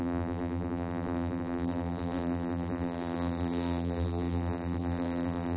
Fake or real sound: fake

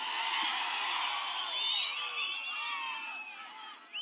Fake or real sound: real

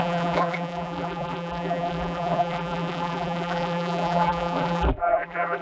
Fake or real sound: fake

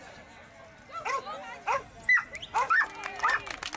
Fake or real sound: real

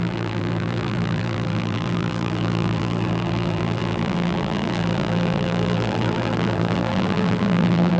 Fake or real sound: fake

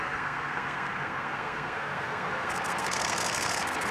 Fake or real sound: fake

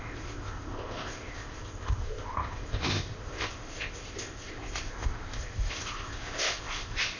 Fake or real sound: fake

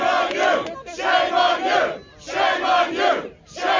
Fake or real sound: real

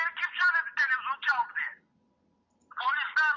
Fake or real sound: real